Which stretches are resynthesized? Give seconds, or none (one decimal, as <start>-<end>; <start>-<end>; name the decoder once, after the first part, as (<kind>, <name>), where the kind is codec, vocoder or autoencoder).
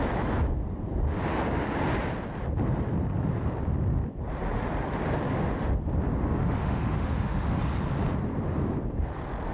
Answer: 6.4-7.6 (autoencoder, DAC-VAE)